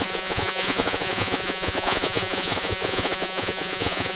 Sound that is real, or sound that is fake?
fake